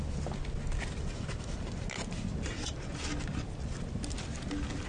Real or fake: real